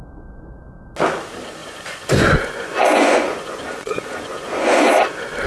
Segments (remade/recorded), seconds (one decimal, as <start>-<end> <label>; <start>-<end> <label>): 0.0-1.6 recorded; 1.6-4.9 remade; 4.9-5.5 recorded